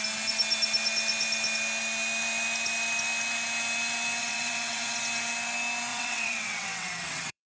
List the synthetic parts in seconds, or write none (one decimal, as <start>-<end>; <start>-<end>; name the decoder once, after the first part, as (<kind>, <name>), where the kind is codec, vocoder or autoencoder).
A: 4.2-5.0 (vocoder, WaveNeXt); 5.9-7.5